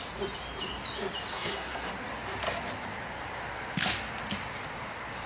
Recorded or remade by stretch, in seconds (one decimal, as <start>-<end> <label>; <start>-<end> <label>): 0.0-1.3 recorded; 1.3-1.9 remade; 1.9-5.3 recorded